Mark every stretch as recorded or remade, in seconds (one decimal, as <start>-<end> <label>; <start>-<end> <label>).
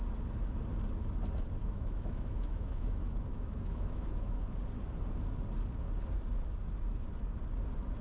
0.0-1.6 recorded; 1.6-4.4 remade; 4.4-8.0 recorded